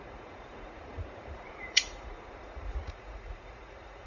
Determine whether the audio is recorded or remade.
remade